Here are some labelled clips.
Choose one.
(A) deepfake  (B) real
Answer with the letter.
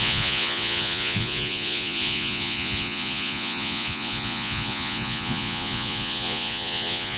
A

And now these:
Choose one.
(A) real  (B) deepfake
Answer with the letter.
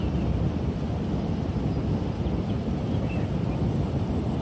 A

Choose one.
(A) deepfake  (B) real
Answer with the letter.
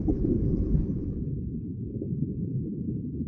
A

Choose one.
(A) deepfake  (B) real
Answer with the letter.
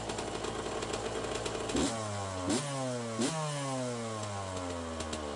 B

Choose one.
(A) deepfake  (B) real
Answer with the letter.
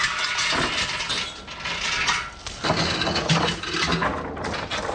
B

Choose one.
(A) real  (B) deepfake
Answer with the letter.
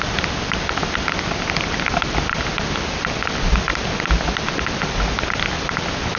A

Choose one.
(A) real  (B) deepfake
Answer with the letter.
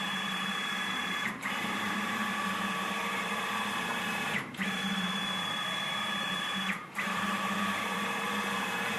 B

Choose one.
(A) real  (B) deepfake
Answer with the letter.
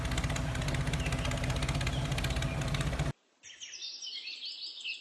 A